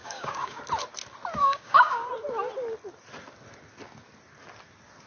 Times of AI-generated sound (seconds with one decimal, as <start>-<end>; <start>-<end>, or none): 0.0-0.6; 1.4-2.1